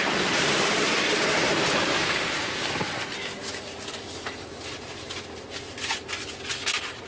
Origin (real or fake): real